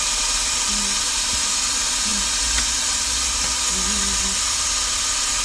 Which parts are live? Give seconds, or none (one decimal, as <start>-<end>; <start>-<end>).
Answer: 0.0-5.4